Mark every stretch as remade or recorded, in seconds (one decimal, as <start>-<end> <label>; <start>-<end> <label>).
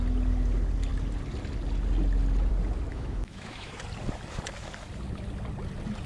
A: 0.0-2.9 recorded; 2.9-3.7 remade; 3.7-6.1 recorded